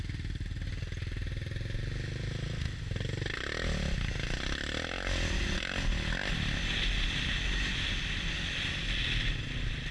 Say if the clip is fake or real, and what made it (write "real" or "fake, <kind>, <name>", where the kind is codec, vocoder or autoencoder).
real